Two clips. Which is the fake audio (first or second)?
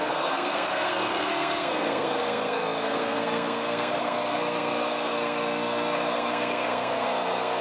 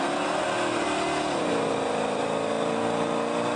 first